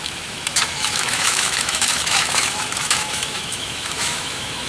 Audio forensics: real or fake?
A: fake